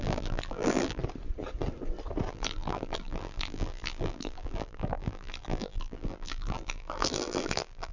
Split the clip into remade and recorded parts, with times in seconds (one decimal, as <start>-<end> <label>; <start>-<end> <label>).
0.0-1.0 remade; 1.0-2.3 recorded; 2.3-7.9 remade